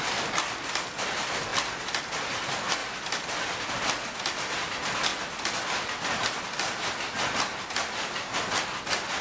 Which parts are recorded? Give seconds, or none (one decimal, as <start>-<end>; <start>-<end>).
0.0-9.2